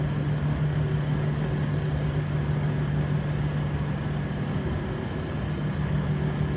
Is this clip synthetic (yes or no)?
no